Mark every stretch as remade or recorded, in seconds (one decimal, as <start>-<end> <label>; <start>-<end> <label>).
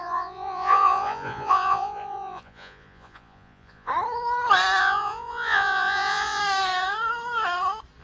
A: 0.0-3.9 remade; 3.9-4.8 recorded; 4.8-6.4 remade; 6.4-8.0 recorded